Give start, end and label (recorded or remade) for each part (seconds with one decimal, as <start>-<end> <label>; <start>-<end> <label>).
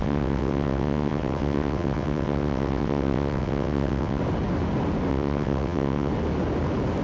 0.0-4.2 remade; 4.2-5.1 recorded; 5.1-6.1 remade; 6.1-7.0 recorded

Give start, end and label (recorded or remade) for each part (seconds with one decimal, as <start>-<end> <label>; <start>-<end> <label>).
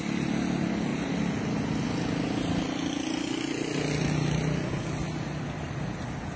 0.0-6.4 recorded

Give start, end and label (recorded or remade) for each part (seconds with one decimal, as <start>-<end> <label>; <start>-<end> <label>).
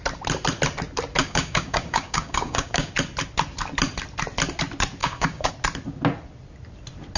0.0-1.2 recorded; 1.2-2.9 remade; 2.9-5.0 recorded; 5.0-5.5 remade; 5.5-7.2 recorded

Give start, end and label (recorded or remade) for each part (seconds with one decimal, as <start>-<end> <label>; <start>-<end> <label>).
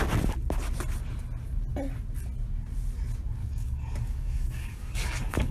0.0-3.4 recorded; 3.4-5.5 remade